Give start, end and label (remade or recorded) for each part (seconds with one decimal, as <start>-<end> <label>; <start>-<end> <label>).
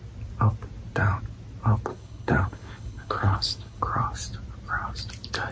0.0-1.9 recorded; 1.9-3.8 remade; 3.8-5.5 recorded